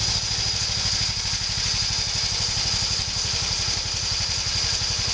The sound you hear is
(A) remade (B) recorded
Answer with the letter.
B